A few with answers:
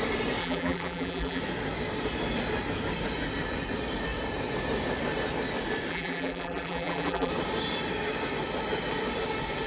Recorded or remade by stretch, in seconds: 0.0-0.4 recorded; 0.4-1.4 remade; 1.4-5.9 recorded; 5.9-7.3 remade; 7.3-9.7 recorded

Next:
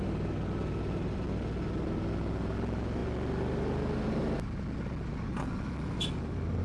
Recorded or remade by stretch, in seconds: 0.0-6.6 recorded

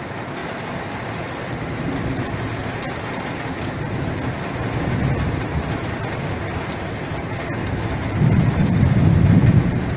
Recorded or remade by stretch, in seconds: 0.0-7.6 recorded; 7.6-10.0 remade

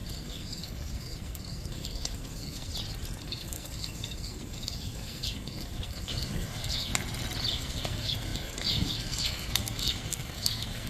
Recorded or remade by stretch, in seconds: 0.0-2.7 remade; 2.7-3.2 recorded; 3.2-6.9 remade; 6.9-7.5 recorded; 7.5-10.9 remade

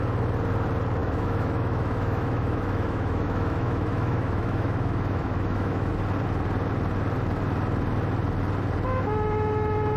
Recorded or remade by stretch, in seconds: 0.0-1.0 recorded; 1.0-5.9 remade; 5.9-10.0 recorded

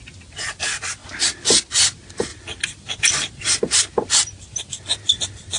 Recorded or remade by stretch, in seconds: 0.0-1.0 recorded; 1.0-1.6 remade; 1.6-2.3 recorded; 2.3-3.8 remade; 3.8-5.6 recorded

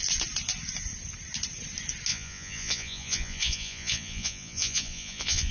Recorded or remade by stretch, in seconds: 0.0-2.1 recorded; 2.1-5.5 remade